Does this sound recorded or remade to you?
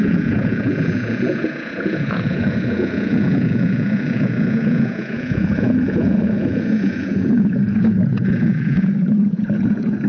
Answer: remade